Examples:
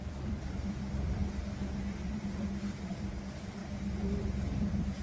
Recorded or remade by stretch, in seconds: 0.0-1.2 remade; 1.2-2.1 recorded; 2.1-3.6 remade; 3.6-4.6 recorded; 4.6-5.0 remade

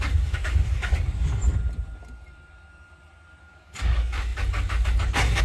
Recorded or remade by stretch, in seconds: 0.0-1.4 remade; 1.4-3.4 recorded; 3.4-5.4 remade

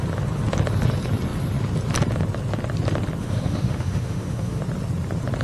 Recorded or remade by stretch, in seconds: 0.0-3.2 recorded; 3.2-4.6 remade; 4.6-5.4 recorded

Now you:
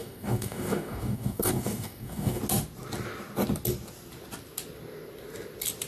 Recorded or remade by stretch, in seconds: 0.0-2.4 remade; 2.4-5.9 recorded

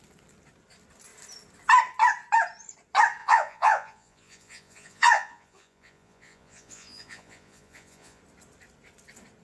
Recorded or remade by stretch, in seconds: 0.0-3.2 recorded; 3.2-8.2 remade; 8.2-9.4 recorded